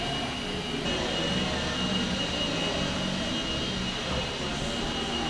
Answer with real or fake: real